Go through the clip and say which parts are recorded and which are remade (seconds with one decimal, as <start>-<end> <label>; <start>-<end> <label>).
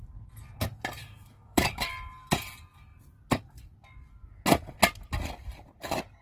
0.0-1.0 recorded; 1.0-1.9 remade; 1.9-6.2 recorded